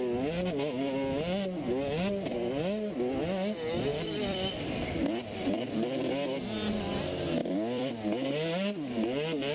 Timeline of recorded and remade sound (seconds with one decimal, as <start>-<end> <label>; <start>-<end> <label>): 0.0-3.9 recorded; 3.9-6.1 remade; 6.1-7.4 recorded; 7.4-7.9 remade; 7.9-9.5 recorded